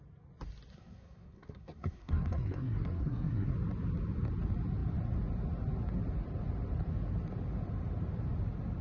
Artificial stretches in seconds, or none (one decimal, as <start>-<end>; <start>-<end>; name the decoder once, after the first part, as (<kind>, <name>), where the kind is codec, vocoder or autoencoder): 0.7-3.5 (codec, SNAC)